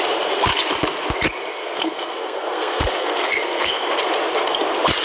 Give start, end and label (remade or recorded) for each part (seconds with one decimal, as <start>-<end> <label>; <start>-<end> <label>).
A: 0.0-1.5 recorded; 1.5-3.9 remade; 3.9-5.0 recorded